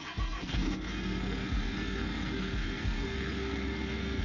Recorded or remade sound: remade